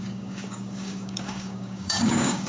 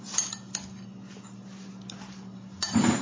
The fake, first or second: first